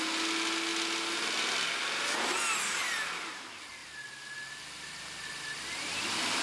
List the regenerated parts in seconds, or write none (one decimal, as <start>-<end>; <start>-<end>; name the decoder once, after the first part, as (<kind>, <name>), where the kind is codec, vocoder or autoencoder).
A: 3.8-5.9 (vocoder, BigVGAN v2)